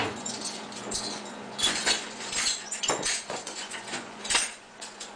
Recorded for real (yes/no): no